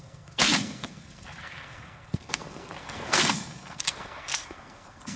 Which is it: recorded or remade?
remade